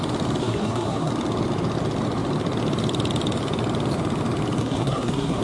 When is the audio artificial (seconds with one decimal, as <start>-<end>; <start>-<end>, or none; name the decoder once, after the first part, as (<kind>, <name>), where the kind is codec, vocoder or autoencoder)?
0.4-1.1 (codec, SNAC); 4.6-5.4

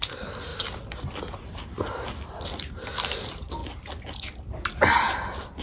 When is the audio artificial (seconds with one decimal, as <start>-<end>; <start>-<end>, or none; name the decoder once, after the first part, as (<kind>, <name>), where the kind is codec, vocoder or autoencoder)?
none

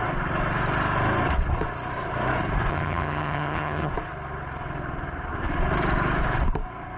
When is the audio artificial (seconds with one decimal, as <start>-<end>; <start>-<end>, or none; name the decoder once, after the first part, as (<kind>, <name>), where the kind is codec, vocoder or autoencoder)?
2.7-3.9 (vocoder, HiFi-GAN)

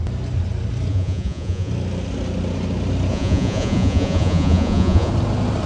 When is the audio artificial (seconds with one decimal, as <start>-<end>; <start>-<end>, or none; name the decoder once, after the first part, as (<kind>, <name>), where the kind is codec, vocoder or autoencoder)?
0.9-1.7 (vocoder, Vocos); 3.1-5.1

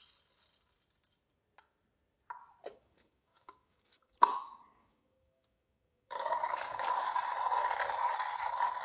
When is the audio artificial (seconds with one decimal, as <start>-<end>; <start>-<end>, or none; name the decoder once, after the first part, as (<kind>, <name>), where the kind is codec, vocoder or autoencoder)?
2.7-7.2 (codec, DAC)